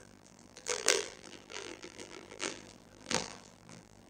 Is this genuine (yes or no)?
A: no